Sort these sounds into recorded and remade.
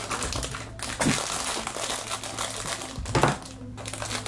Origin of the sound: recorded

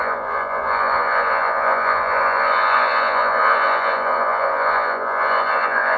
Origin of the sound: remade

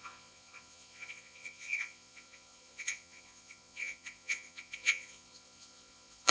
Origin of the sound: remade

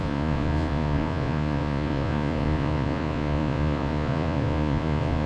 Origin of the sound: remade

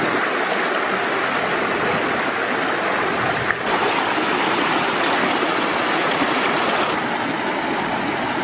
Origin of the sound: recorded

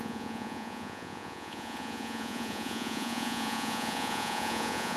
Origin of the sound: remade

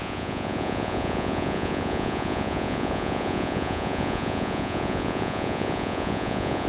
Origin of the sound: remade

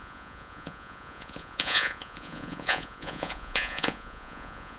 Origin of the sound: remade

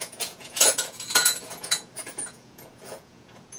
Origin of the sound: remade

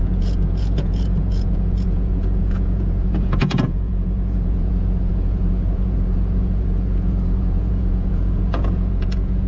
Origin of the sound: remade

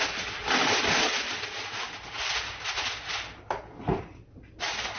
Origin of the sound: recorded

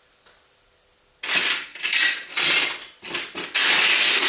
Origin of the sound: recorded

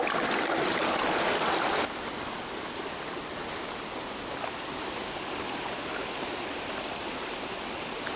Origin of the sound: recorded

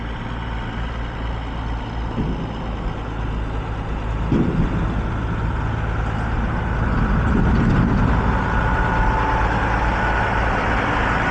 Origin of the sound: recorded